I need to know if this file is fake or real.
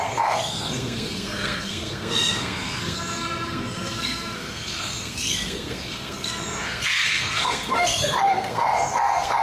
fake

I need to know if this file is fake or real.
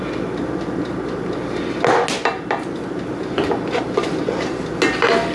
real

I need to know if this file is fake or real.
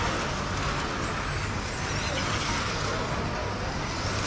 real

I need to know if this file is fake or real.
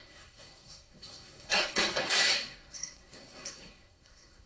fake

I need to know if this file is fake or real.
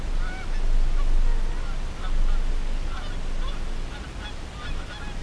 real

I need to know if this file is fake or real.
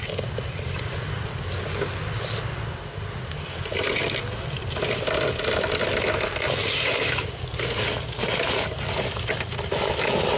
real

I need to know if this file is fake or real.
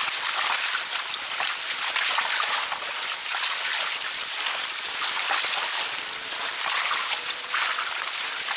real